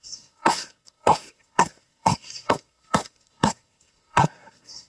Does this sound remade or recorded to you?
remade